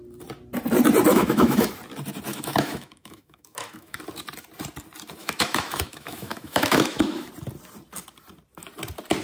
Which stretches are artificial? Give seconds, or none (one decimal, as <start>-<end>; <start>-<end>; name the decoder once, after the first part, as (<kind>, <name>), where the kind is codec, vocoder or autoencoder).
1.1-1.7 (autoencoder, DAC-VAE); 2.3-4.0; 5.2-7.3